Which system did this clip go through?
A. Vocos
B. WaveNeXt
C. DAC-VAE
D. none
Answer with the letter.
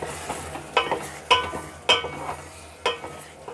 D